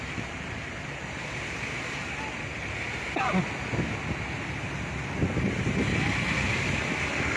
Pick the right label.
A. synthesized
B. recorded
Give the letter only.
B